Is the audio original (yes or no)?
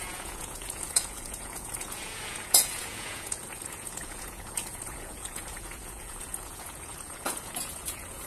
no